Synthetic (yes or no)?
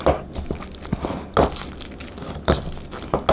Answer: no